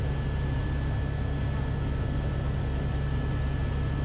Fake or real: real